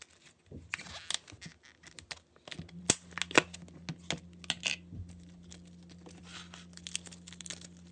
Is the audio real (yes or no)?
yes